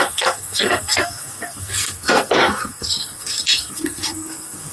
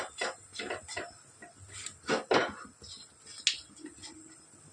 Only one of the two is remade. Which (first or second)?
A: first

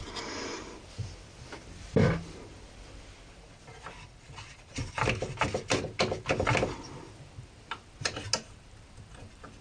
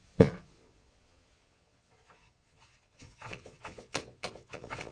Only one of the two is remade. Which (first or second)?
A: second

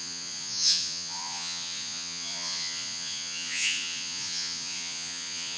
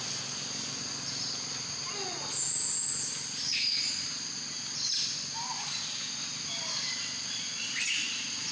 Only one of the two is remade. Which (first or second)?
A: first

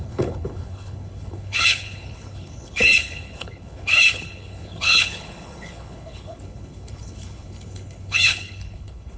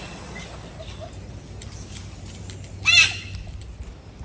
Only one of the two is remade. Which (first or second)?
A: first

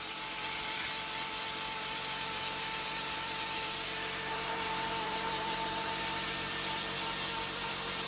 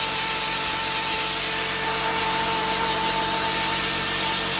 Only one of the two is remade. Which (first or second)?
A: first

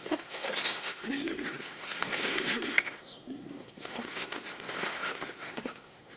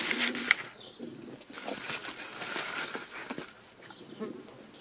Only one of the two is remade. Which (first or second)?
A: first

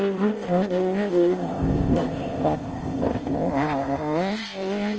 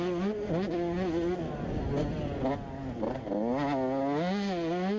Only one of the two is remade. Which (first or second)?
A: first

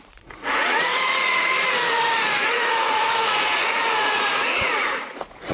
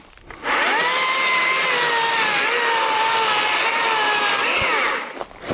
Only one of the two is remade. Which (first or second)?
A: first